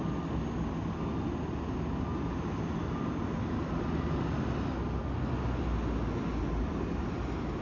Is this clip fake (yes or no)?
no